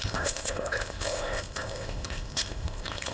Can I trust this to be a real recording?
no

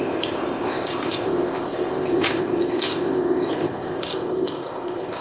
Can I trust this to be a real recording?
no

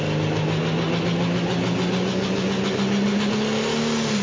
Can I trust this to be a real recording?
yes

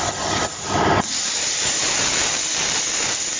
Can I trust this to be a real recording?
yes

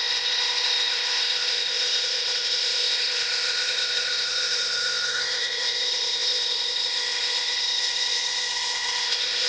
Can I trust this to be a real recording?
no